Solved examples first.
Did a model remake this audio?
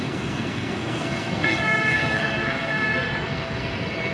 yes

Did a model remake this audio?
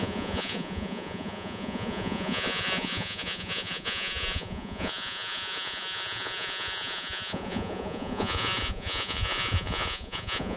yes